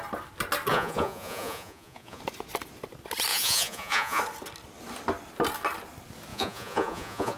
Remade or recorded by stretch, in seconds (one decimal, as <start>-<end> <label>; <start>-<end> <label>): 0.0-0.7 recorded; 0.7-2.2 remade; 2.2-3.3 recorded; 3.3-4.2 remade; 4.2-6.3 recorded; 6.3-7.4 remade